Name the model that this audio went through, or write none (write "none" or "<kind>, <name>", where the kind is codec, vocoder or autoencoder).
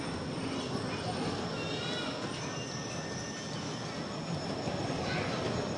none